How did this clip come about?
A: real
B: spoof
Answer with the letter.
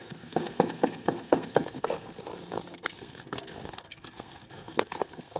B